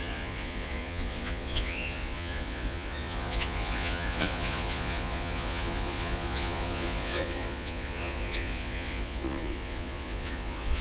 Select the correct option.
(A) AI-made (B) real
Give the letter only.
A